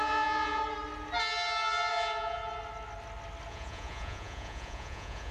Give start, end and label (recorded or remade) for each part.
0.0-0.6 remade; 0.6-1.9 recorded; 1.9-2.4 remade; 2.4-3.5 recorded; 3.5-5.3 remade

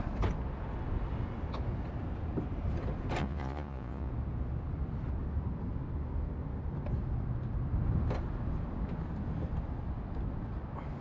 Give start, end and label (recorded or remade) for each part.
0.0-3.2 recorded; 3.2-4.1 remade; 4.1-11.0 recorded

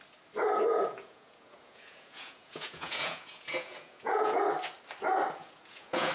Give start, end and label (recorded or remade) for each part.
0.0-0.7 recorded; 0.7-4.4 remade; 4.4-5.4 recorded; 5.4-6.1 remade